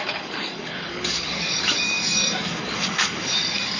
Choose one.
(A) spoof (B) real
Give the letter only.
A